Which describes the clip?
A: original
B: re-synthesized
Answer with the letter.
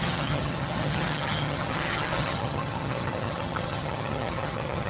B